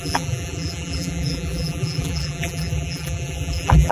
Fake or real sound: fake